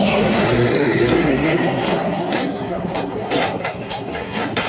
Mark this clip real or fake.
fake